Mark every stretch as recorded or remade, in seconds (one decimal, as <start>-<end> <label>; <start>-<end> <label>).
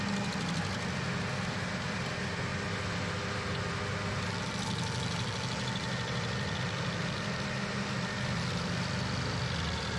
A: 0.0-10.0 recorded